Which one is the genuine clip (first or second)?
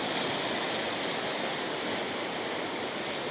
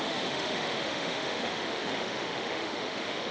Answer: first